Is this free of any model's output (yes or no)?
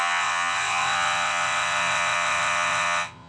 no